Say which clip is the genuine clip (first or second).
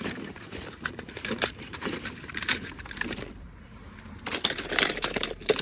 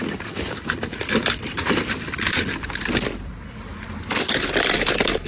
second